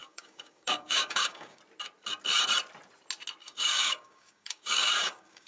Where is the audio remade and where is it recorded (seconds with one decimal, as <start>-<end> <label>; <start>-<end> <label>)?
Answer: 0.0-1.6 remade; 1.6-3.4 recorded; 3.4-5.5 remade